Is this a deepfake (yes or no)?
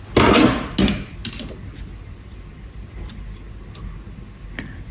no